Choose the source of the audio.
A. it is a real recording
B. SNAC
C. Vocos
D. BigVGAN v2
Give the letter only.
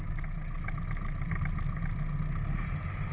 A